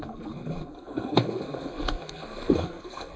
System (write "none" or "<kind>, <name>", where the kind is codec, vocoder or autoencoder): codec, SNAC